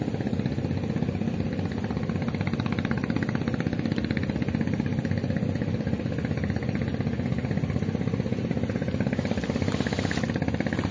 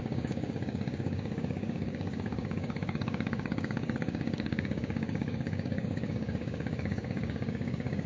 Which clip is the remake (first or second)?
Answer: second